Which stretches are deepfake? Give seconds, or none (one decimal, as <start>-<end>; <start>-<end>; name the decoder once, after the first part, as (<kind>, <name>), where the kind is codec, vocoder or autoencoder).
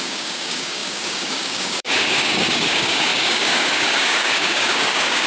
0.0-5.3 (codec, DAC)